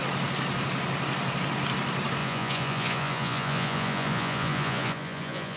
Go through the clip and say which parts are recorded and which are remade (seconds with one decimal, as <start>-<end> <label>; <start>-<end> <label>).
0.0-2.2 recorded; 2.2-5.6 remade